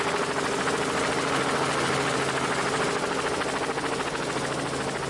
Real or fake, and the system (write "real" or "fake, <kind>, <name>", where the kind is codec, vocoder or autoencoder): real